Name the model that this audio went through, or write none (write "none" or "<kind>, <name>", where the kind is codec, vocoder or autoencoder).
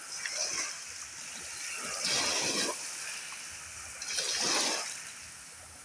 none